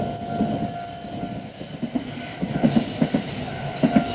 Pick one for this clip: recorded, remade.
recorded